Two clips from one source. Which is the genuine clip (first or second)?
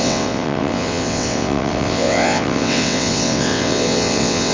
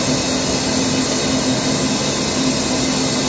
second